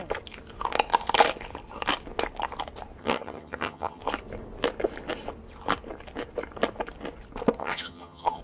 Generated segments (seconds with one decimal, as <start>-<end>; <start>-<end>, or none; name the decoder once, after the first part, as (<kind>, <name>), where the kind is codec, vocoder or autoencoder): 3.0-4.0 (vocoder, HiFi-GAN); 7.6-8.4